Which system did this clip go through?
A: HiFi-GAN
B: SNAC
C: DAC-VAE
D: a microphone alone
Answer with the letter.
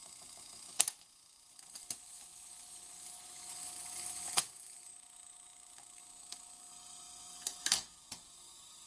C